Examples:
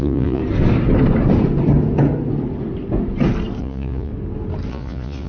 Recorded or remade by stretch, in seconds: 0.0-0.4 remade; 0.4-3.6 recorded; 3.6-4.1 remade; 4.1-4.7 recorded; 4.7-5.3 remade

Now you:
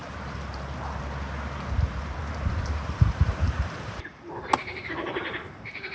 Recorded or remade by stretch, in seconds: 0.0-1.0 remade; 1.0-2.2 recorded; 2.2-4.1 remade; 4.1-4.6 recorded; 4.6-5.9 remade

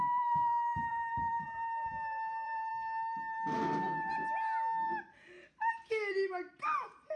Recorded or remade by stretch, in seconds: 0.0-2.7 remade; 2.7-6.3 recorded; 6.3-7.2 remade